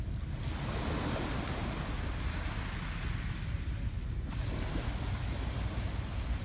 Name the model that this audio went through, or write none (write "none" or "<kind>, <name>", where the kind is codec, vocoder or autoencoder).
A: none